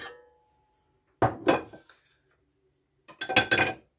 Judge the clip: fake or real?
real